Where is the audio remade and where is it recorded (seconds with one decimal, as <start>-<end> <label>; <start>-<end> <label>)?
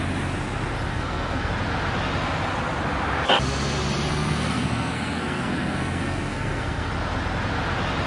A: 0.0-0.9 recorded; 0.9-1.5 remade; 1.5-4.1 recorded; 4.1-6.9 remade; 6.9-8.1 recorded